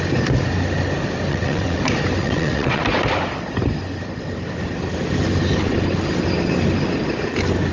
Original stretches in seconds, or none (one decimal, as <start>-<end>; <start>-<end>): 0.0-1.3; 1.8-2.2; 2.8-7.7